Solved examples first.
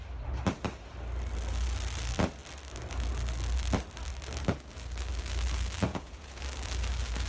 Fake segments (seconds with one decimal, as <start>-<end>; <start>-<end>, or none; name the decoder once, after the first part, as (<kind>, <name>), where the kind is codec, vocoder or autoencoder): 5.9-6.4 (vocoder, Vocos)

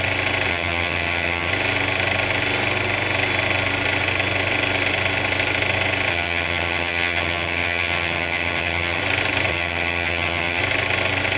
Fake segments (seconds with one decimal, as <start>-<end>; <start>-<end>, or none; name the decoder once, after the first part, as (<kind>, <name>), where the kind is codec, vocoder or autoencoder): 0.5-1.5 (vocoder, HiFi-GAN); 6.1-9.0; 9.5-10.6

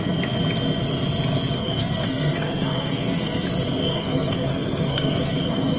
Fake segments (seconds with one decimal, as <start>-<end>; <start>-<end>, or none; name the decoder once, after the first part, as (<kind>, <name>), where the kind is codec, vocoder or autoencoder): 1.6-3.4 (codec, SNAC); 3.8-5.8

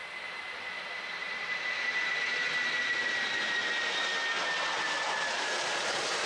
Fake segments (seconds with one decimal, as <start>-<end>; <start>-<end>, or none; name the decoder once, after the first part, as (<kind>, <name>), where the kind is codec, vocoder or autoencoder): 0.9-2.1 (vocoder, BigVGAN v2); 2.9-3.6; 4.8-6.3

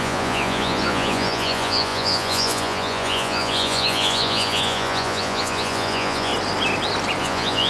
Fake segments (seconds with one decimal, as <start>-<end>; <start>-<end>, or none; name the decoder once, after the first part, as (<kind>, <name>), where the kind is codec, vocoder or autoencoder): 0.0-6.3 (vocoder, Vocos); 7.2-7.7

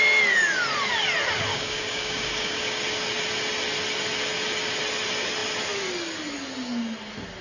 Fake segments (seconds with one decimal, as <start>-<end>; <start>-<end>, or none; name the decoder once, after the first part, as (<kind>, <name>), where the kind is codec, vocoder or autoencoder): 1.5-2.8 (codec, DAC)

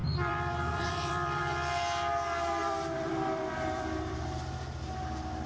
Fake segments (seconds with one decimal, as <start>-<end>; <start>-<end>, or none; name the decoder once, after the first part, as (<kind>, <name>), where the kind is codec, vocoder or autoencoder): 0.0-1.4 (vocoder, BigVGAN v2); 2.6-4.4